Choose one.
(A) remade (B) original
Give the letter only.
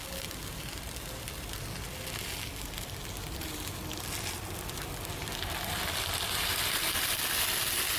B